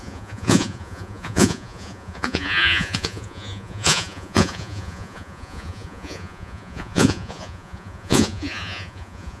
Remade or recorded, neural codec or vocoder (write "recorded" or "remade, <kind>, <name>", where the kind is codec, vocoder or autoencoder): remade, vocoder, Vocos